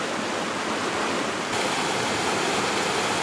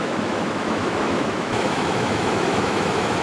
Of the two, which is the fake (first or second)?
second